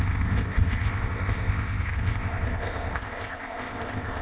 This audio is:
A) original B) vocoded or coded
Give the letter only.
B